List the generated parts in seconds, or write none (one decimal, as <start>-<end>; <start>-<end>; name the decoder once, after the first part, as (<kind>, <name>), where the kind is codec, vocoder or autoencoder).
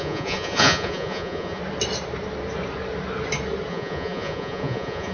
0.0-1.6 (vocoder, Vocos); 3.7-5.1